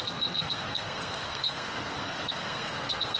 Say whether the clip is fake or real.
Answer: fake